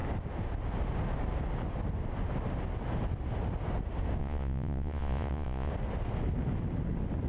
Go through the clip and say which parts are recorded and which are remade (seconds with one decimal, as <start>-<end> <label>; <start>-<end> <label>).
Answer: 0.0-4.2 recorded; 4.2-5.7 remade; 5.7-7.3 recorded